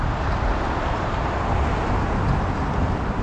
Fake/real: real